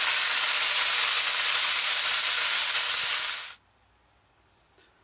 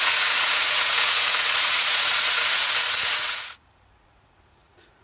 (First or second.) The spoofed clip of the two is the second